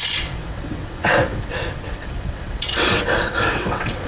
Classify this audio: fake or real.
fake